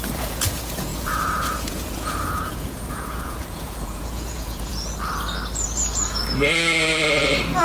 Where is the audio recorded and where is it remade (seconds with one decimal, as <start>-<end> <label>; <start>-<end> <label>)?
0.0-4.7 remade; 4.7-7.6 recorded